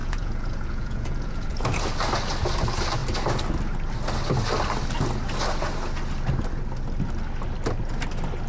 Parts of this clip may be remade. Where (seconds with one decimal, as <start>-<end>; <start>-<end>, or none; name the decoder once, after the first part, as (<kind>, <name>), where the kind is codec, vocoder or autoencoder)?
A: 0.0-1.8 (vocoder, Vocos)